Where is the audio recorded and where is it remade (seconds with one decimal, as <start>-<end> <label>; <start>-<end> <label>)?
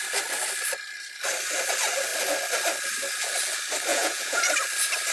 0.0-3.9 recorded; 3.9-4.5 remade; 4.5-5.1 recorded